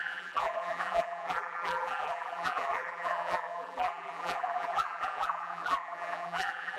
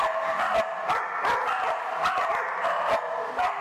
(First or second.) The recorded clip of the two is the second